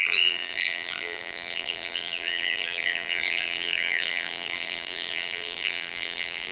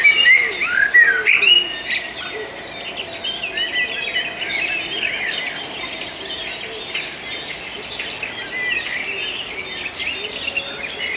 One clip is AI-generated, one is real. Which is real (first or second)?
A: second